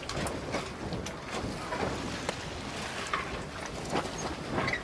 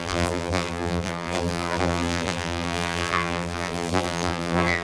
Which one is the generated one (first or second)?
second